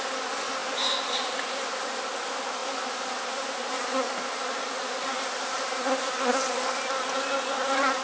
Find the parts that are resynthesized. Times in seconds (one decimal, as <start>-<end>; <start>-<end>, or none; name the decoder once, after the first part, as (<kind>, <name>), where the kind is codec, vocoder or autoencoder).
none